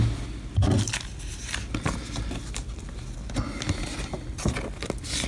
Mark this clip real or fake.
real